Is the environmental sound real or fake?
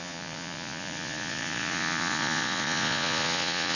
fake